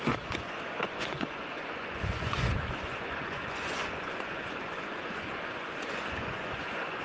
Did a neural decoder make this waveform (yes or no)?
yes